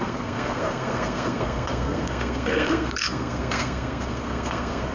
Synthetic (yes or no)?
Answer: yes